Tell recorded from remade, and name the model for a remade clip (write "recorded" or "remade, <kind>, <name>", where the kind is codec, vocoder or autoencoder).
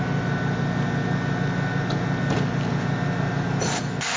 recorded